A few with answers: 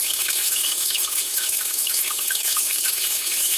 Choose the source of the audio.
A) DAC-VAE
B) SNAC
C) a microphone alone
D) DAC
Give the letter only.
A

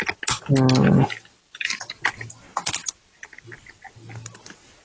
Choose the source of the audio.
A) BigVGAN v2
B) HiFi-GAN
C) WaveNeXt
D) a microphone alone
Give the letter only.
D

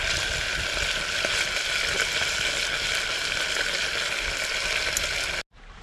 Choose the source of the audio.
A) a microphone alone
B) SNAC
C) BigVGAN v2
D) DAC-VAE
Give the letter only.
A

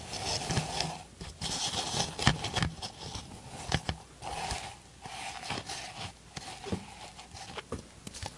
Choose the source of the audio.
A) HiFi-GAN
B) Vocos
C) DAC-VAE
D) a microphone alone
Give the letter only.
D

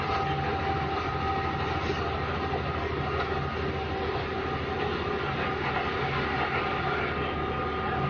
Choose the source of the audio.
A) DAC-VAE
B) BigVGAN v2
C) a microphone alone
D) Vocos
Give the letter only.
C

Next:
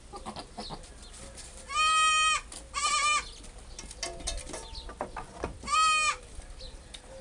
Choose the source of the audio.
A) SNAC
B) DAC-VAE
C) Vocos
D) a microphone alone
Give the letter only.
D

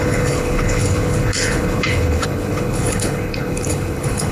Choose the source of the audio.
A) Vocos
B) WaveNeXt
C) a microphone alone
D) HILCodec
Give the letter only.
D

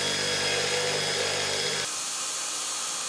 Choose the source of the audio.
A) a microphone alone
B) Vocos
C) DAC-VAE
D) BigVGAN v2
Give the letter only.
A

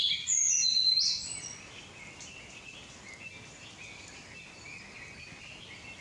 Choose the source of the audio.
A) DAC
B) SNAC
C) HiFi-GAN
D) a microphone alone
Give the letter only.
D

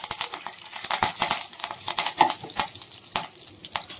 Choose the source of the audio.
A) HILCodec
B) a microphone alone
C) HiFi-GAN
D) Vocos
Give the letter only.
B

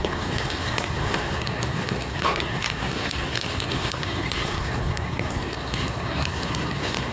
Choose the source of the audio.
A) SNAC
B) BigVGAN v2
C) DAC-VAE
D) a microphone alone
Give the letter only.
A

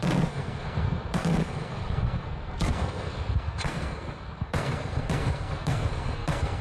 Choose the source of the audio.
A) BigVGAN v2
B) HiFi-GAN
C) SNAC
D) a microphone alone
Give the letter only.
C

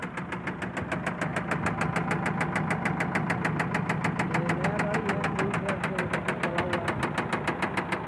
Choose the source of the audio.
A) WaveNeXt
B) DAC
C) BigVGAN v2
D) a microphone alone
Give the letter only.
D